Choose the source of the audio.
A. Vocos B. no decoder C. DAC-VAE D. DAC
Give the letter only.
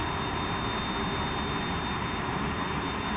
B